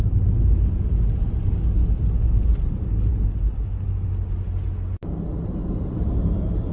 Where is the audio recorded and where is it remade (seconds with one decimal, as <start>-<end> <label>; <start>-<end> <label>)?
0.0-6.7 recorded